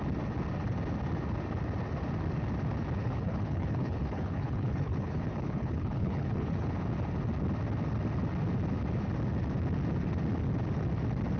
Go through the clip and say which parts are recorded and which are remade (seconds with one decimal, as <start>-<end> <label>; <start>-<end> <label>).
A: 0.0-3.0 recorded; 3.0-6.7 remade; 6.7-11.4 recorded